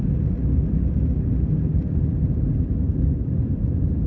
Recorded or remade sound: recorded